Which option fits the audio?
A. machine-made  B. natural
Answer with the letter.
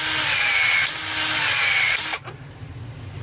B